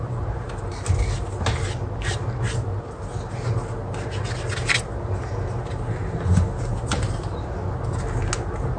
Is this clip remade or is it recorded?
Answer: recorded